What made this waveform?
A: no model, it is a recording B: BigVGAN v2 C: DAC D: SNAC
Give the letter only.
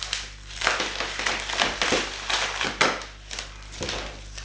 B